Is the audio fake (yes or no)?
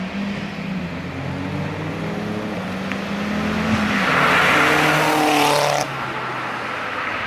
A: no